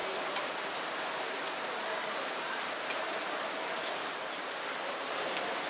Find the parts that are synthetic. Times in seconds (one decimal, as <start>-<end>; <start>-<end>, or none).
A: none